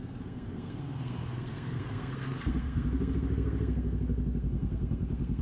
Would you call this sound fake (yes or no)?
yes